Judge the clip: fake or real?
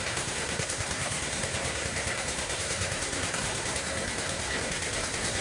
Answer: fake